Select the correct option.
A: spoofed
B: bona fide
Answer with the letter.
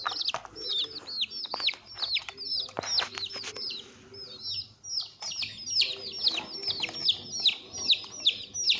B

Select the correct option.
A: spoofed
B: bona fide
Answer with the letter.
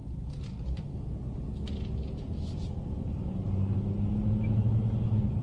B